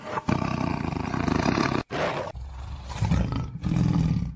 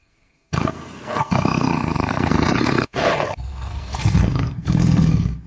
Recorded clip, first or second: first